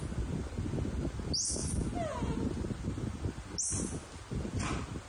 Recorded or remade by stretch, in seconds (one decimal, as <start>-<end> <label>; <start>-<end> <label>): 0.0-5.1 recorded